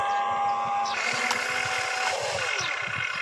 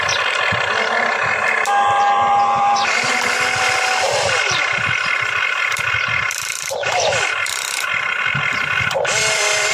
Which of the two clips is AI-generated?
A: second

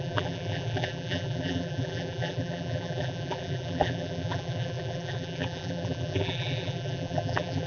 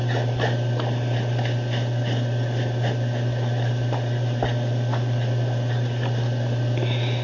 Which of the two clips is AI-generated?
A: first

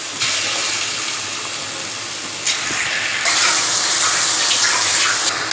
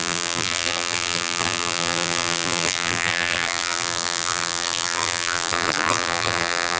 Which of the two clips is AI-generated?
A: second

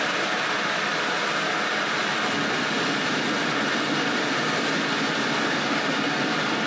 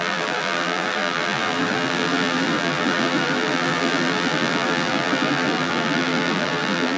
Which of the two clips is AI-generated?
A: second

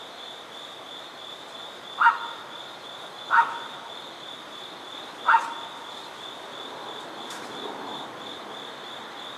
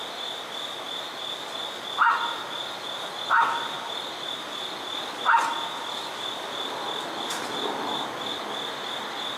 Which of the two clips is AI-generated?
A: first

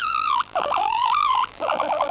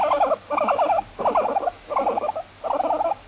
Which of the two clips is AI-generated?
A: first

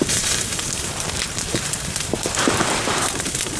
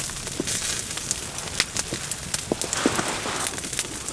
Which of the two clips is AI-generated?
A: first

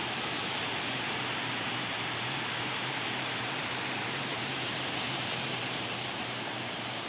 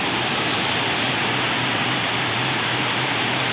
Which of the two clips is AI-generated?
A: first